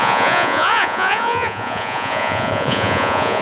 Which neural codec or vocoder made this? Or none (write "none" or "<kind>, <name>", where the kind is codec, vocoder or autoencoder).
vocoder, Vocos